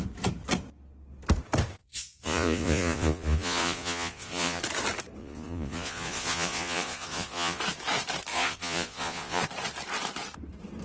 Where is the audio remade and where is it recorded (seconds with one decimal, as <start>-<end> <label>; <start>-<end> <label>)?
0.0-1.8 recorded; 1.8-4.6 remade; 4.6-5.2 recorded; 5.2-7.6 remade; 7.6-8.3 recorded; 8.3-9.4 remade; 9.4-10.8 recorded